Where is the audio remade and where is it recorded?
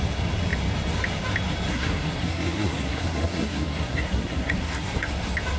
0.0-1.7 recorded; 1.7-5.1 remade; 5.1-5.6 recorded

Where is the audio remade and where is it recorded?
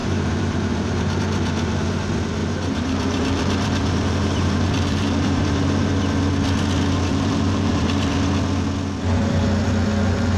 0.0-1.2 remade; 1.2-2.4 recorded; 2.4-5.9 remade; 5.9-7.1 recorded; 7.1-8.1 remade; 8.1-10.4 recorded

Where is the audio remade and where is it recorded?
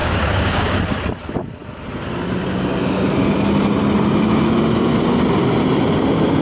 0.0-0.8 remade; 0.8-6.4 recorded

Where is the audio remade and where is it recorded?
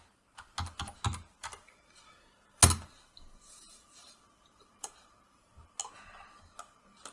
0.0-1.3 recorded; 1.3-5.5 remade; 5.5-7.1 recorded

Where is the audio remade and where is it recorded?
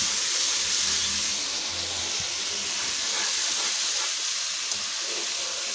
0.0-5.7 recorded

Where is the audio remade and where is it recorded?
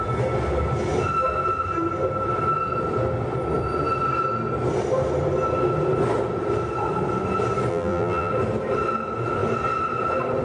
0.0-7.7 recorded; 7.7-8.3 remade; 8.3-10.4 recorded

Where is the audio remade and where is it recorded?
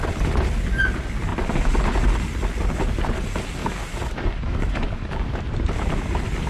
0.0-3.6 recorded; 3.6-5.4 remade; 5.4-6.5 recorded